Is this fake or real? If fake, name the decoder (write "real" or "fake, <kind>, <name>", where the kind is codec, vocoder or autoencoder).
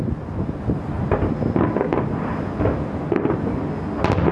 real